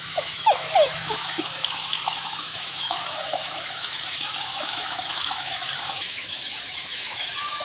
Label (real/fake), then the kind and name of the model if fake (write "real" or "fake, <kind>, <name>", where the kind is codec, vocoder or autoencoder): fake, autoencoder, DAC-VAE